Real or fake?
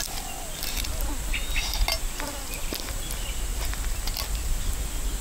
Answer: real